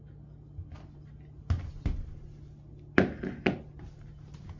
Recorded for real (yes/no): yes